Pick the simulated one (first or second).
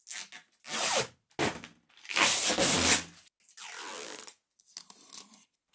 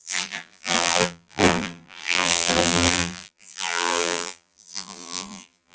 second